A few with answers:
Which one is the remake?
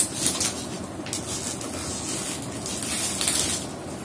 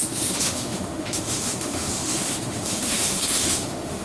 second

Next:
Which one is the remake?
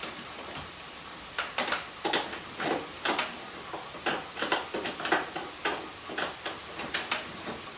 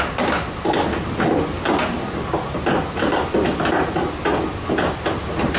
first